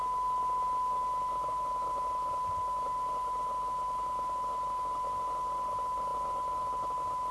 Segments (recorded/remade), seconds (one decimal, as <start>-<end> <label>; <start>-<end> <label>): 0.0-7.3 recorded